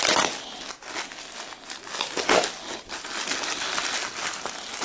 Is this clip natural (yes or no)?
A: yes